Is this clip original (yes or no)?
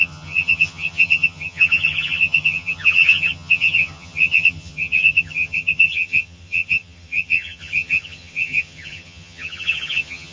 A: no